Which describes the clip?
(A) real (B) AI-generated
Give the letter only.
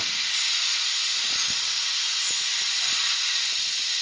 A